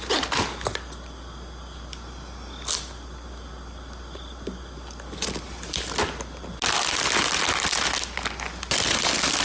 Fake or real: real